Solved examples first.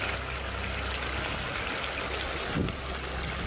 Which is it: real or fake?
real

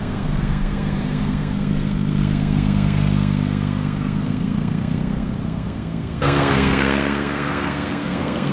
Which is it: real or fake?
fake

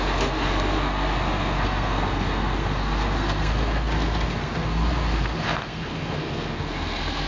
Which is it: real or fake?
fake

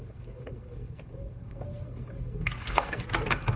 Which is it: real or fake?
fake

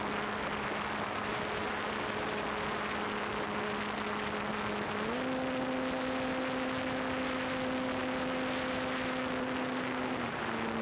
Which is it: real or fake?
real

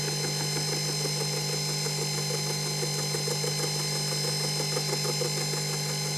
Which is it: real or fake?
real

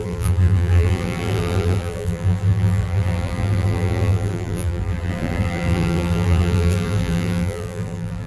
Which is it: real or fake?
fake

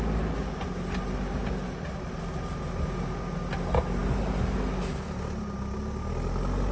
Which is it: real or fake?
real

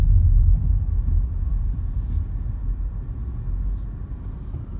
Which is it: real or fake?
real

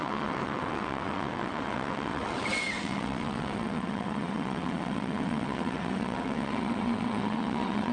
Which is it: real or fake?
fake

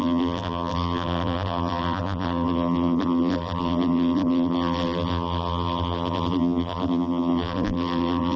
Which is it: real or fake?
fake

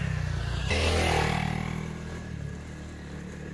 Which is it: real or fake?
real